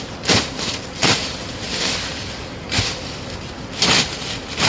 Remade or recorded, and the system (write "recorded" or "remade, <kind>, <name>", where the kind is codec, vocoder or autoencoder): recorded